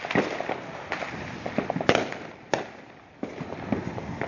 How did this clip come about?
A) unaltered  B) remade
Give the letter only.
A